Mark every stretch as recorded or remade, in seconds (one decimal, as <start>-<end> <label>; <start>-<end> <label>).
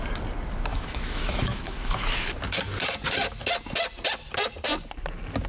0.0-0.7 recorded; 0.7-2.0 remade; 2.0-5.5 recorded